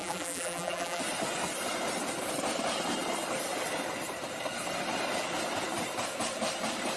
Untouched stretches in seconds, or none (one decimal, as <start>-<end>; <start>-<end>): 1.0-7.0